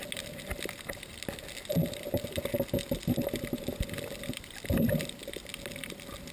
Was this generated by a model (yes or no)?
no